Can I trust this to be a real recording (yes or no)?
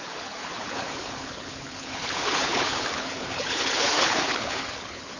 no